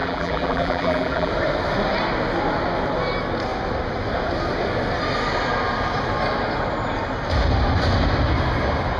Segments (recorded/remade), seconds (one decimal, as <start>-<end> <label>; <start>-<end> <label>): 0.0-1.3 remade; 1.3-9.0 recorded